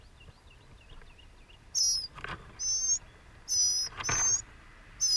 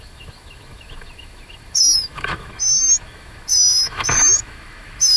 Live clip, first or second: first